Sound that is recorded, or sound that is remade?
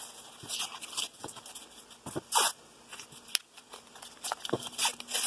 recorded